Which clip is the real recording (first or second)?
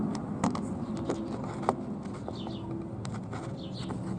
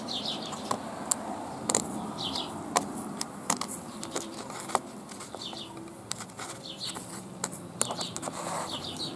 first